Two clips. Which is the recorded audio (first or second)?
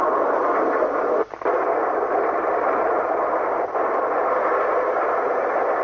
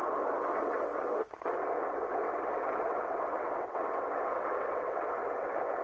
first